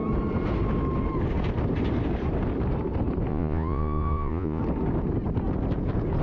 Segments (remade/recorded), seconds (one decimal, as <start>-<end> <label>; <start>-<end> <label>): 0.0-3.3 recorded; 3.3-4.6 remade; 4.6-6.2 recorded